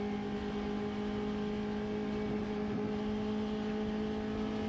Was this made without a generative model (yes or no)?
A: yes